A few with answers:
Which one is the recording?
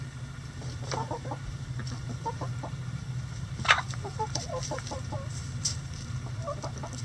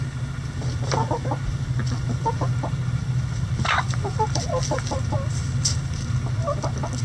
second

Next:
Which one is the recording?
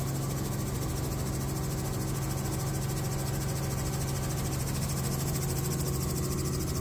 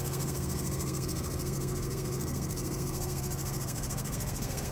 first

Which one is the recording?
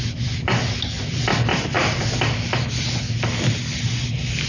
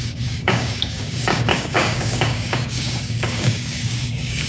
first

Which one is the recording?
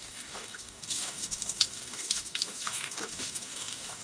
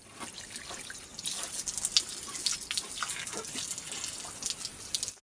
second